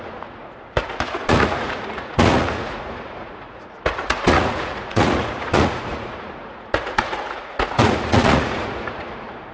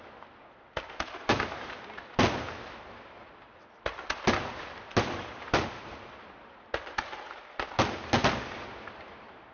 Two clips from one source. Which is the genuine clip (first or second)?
second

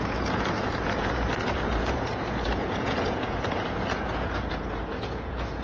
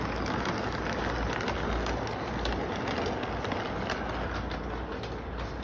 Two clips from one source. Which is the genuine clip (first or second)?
second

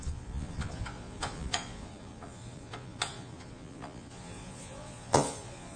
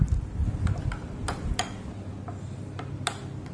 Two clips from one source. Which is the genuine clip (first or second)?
second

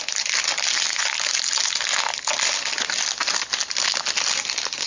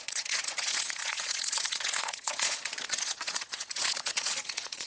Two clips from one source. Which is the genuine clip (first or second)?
first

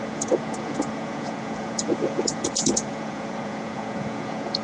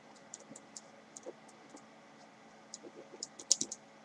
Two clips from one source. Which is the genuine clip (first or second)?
second